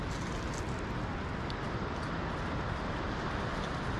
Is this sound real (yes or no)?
yes